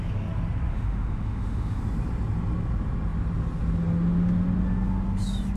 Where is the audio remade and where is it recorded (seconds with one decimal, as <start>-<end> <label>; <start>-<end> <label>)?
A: 0.0-0.7 recorded; 0.7-1.8 remade; 1.8-5.6 recorded

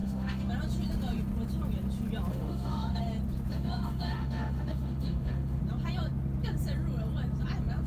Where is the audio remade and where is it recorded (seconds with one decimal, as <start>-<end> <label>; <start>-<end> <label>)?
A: 0.0-0.5 remade; 0.5-2.3 recorded; 2.3-3.0 remade; 3.0-3.5 recorded; 3.5-5.6 remade; 5.6-7.9 recorded

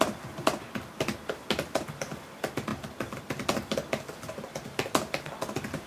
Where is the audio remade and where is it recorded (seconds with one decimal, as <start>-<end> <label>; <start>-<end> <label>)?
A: 0.0-5.9 recorded

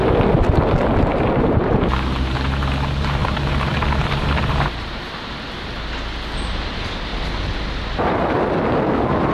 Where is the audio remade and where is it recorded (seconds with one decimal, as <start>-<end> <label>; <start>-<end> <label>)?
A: 0.0-1.1 recorded; 1.1-1.8 remade; 1.8-3.2 recorded; 3.2-4.9 remade; 4.9-9.3 recorded